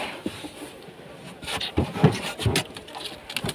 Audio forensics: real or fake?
real